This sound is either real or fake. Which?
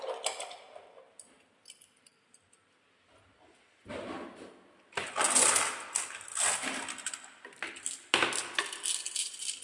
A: real